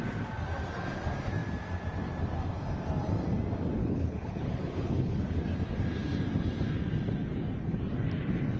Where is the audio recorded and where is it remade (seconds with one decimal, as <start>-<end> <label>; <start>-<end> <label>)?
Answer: 0.0-3.8 recorded; 3.8-5.4 remade; 5.4-8.6 recorded